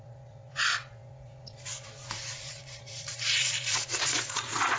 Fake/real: fake